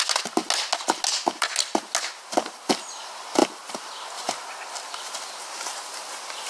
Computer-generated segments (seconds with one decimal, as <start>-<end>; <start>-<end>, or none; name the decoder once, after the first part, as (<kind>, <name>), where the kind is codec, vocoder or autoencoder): none